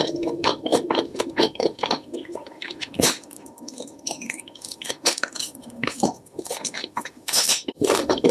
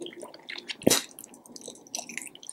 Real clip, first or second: second